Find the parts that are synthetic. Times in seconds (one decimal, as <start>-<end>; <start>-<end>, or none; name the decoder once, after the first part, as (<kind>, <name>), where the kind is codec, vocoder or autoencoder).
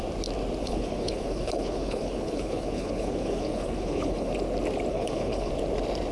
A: 0.6-4.3 (codec, HILCodec); 4.9-5.5